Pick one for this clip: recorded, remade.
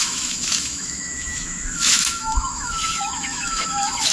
remade